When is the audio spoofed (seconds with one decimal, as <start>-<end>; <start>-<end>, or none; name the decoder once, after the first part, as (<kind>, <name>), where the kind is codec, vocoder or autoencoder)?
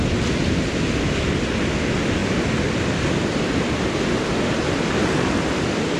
none